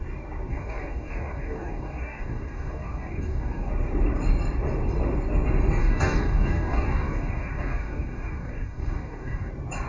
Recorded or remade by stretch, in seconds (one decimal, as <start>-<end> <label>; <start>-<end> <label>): 0.0-0.5 recorded; 0.5-3.7 remade; 3.7-5.8 recorded; 5.8-9.5 remade; 9.5-9.9 recorded